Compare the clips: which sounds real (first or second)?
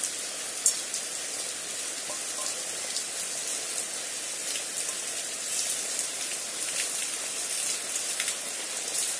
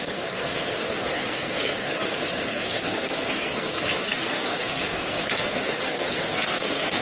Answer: first